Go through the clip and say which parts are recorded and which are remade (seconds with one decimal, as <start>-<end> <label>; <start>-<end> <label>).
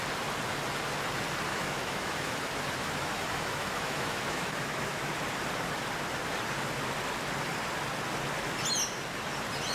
0.0-1.5 recorded; 1.5-2.4 remade; 2.4-2.8 recorded; 2.8-5.1 remade; 5.1-9.7 recorded